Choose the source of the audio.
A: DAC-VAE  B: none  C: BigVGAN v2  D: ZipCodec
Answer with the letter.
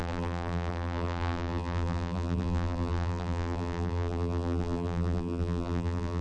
C